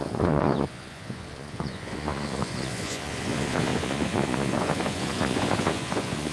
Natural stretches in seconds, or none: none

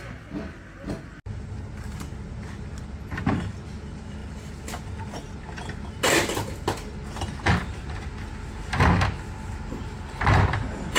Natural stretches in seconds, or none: 0.0-11.0

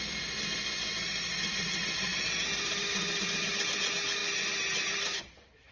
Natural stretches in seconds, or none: 0.0-5.7

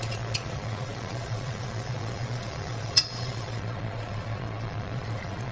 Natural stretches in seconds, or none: none